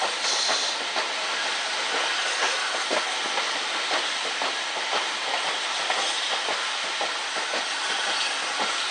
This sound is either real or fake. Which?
real